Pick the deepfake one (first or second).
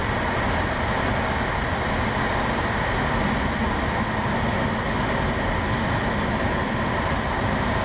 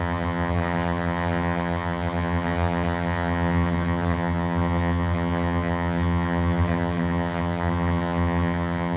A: second